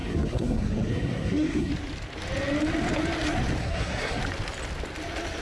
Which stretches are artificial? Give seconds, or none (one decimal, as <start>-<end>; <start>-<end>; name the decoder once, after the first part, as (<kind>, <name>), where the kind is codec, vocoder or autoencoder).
0.0-1.7 (codec, SNAC); 3.6-4.2